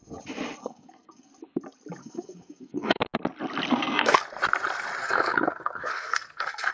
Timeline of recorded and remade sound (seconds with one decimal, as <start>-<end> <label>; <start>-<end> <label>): 0.0-0.6 recorded; 0.6-1.3 remade; 1.3-2.0 recorded; 2.0-3.0 remade; 3.0-3.7 recorded; 3.7-4.3 remade; 4.3-5.0 recorded; 5.0-6.7 remade